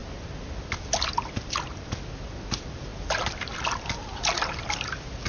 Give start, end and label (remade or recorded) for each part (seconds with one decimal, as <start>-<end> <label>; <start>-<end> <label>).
0.0-5.3 recorded